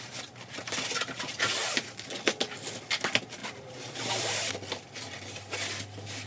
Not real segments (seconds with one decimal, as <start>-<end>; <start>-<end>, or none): 3.4-4.5